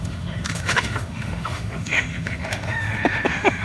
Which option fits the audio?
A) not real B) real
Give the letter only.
A